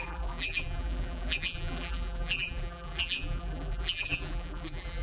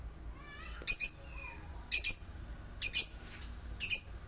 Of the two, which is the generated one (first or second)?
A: first